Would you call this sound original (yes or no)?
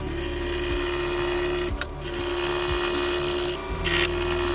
yes